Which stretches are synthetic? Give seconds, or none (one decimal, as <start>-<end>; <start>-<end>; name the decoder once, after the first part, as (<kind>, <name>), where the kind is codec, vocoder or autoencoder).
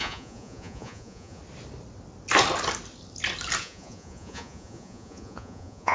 0.0-1.4 (vocoder, Vocos); 3.6-5.9